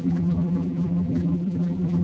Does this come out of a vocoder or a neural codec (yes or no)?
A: yes